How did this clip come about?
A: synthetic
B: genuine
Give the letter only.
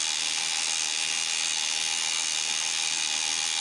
B